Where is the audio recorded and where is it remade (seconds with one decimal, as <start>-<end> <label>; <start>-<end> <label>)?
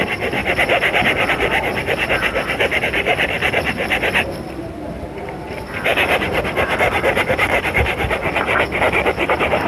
0.0-0.4 remade; 0.4-1.3 recorded; 1.3-5.9 remade; 5.9-8.8 recorded; 8.8-9.7 remade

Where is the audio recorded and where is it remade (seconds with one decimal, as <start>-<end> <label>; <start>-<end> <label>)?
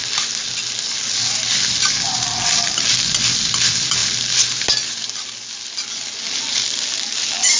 0.0-7.6 recorded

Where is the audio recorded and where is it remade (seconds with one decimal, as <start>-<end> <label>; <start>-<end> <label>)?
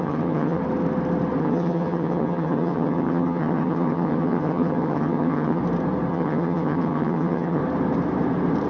0.0-0.6 remade; 0.6-1.4 recorded; 1.4-5.6 remade; 5.6-6.1 recorded; 6.1-7.6 remade; 7.6-8.7 recorded